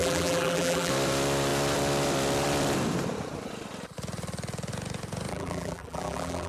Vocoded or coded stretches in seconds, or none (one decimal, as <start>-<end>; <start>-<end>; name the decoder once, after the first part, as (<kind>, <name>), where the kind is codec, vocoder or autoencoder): 0.0-0.9 (vocoder, BigVGAN v2); 5.3-6.5